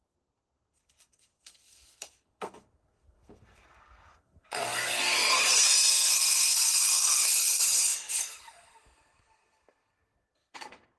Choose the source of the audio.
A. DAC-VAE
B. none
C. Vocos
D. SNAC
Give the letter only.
D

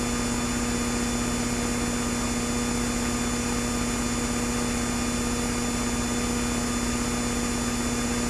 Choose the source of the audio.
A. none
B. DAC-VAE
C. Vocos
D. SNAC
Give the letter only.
A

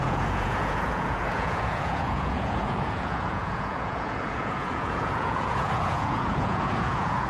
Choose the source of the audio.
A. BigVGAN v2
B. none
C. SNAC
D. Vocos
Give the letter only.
D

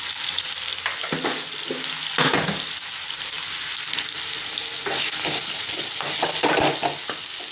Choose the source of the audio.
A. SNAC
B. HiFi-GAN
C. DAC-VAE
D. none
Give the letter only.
D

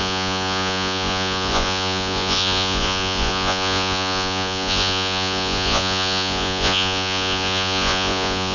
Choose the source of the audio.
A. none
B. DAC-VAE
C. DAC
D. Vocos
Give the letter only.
D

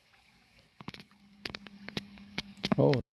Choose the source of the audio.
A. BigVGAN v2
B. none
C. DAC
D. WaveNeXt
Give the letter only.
C